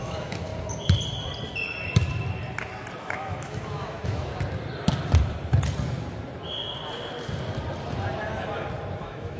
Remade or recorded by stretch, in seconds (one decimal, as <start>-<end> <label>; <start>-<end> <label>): 0.0-0.5 remade; 0.5-3.0 recorded; 3.0-4.3 remade; 4.3-9.0 recorded; 9.0-9.4 remade